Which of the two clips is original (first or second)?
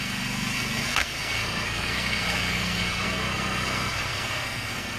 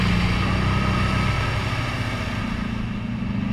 second